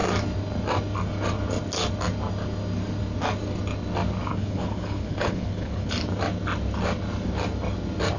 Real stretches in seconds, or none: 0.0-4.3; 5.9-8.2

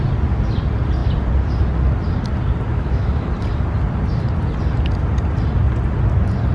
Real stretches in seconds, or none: 0.0-2.7; 3.3-6.5

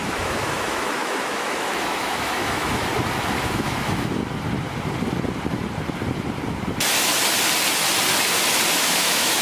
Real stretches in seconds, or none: 2.9-3.4; 4.2-8.7

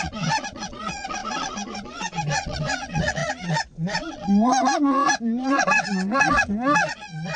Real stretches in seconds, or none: none